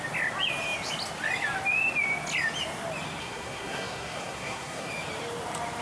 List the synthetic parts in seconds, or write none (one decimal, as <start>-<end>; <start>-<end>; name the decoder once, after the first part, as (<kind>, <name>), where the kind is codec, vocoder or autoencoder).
3.2-4.9 (codec, SNAC)